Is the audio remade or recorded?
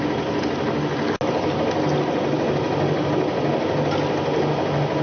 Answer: recorded